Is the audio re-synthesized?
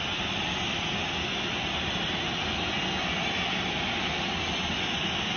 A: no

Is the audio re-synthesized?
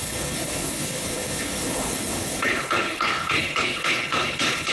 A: yes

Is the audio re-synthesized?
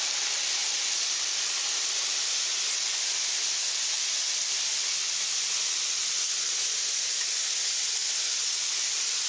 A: no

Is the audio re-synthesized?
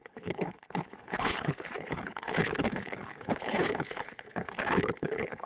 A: yes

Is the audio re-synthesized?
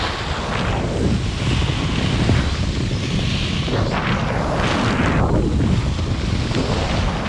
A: no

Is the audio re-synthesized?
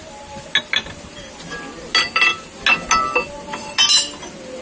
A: no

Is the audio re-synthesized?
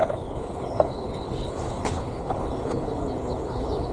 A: yes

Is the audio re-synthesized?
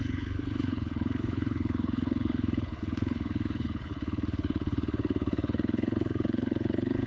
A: yes